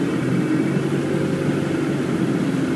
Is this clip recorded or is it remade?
recorded